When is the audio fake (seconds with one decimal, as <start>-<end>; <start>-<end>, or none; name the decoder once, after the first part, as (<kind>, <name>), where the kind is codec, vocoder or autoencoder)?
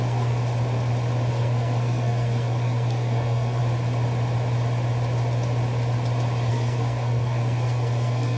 0.0-0.4 (codec, SNAC); 1.3-3.6; 6.5-8.4